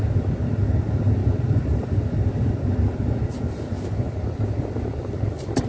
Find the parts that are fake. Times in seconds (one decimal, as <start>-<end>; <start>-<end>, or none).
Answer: none